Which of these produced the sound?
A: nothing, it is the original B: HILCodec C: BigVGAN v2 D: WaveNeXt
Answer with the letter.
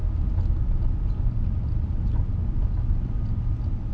A